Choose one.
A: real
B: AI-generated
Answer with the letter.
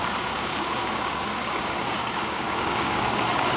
B